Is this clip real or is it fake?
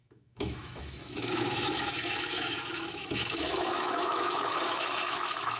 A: fake